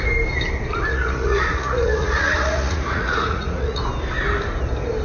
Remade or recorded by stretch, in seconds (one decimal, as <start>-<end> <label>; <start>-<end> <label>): 0.0-0.9 recorded; 0.9-3.8 remade; 3.8-5.0 recorded